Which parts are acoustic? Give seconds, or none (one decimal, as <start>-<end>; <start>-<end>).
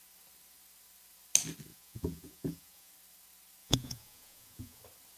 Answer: 0.0-1.7; 2.9-3.6; 4.8-5.2